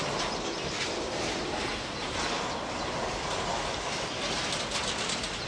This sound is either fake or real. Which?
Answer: real